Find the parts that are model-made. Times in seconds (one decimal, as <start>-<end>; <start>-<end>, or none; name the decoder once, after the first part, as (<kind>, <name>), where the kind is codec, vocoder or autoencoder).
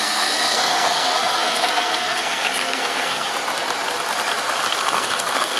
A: 0.0-3.3 (codec, SNAC); 4.8-5.6